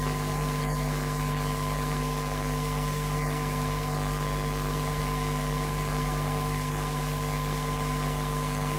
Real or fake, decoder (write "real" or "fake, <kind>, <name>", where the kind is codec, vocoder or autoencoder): fake, codec, SNAC